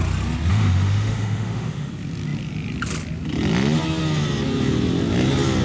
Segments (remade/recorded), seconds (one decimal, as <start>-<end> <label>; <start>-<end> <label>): 0.0-0.5 recorded; 0.5-1.9 remade; 1.9-5.6 recorded